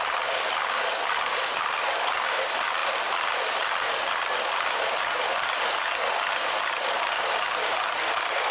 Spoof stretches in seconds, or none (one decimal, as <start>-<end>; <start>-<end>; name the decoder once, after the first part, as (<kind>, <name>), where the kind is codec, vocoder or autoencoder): none